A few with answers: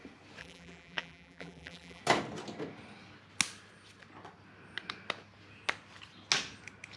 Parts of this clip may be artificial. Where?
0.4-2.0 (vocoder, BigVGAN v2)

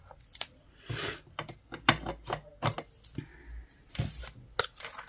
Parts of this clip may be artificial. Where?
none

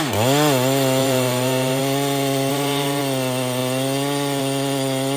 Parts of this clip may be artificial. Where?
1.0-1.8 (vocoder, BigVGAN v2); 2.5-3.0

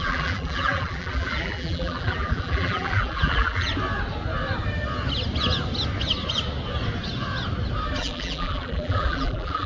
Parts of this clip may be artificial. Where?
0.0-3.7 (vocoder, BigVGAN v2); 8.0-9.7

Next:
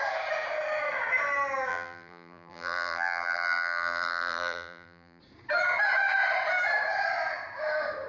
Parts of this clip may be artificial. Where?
1.7-5.2 (vocoder, BigVGAN v2)